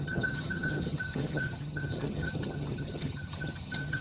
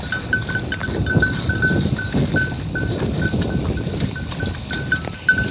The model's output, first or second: first